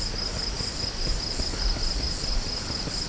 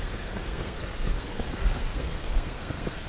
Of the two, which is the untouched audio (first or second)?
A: first